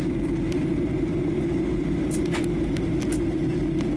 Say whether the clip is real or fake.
real